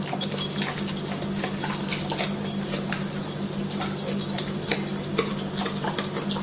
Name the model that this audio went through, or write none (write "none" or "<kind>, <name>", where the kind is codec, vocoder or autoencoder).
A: none